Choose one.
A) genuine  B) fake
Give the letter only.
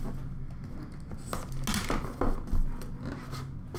A